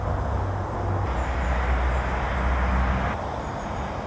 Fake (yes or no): no